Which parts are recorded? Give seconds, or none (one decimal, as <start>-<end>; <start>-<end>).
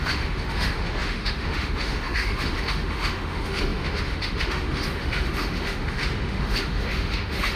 none